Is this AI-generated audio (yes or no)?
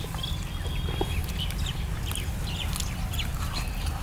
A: no